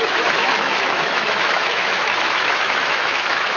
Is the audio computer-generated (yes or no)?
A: yes